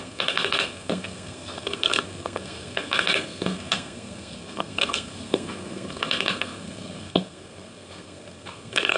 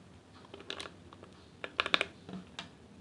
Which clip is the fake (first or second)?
first